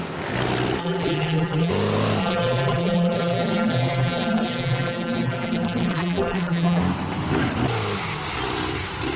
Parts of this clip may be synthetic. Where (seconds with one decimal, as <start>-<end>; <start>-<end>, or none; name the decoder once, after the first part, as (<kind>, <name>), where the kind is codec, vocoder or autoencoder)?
0.8-1.7 (vocoder, BigVGAN v2); 2.2-6.8